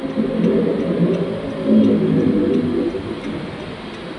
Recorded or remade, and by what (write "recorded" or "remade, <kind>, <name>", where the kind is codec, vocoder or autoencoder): recorded